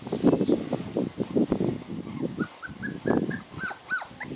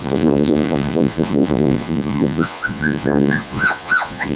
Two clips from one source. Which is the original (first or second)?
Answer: first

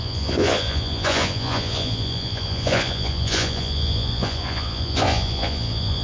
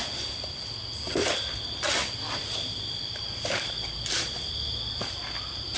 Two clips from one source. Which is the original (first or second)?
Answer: second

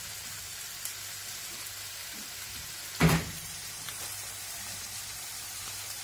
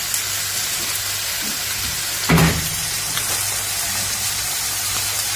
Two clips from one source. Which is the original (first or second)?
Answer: second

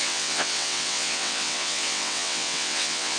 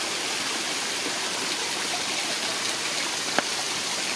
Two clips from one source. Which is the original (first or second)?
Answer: second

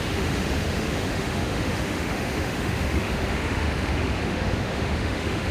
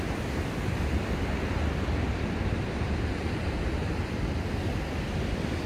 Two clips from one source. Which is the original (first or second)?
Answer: second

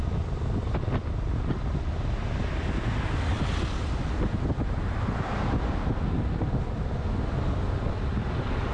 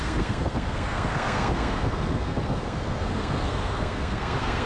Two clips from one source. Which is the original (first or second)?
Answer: first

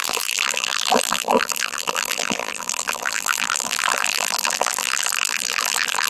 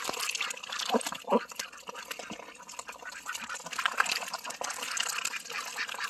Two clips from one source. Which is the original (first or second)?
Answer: second